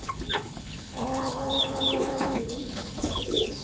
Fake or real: fake